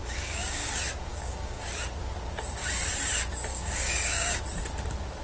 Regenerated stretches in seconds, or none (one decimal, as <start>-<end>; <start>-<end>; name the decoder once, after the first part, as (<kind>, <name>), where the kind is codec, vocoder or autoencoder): 0.0-0.7 (codec, DAC); 1.1-1.6; 3.5-4.4